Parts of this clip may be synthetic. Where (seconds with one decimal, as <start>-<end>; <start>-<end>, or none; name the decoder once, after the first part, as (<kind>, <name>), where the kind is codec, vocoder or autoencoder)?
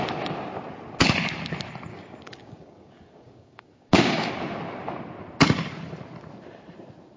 1.9-4.3 (codec, DAC)